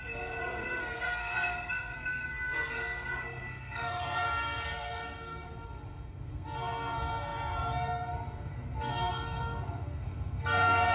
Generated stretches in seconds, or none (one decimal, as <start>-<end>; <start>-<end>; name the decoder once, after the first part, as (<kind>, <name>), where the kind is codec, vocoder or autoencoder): 0.0-10.9 (codec, SNAC)